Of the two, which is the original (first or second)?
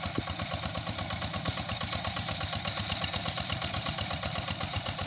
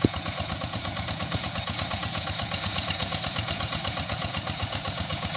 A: first